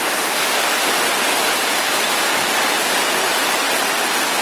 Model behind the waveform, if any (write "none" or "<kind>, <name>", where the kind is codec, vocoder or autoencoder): none